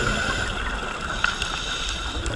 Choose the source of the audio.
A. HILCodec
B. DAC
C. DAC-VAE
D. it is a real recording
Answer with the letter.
D